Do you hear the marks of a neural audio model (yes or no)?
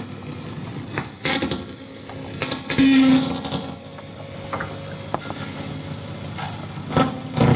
no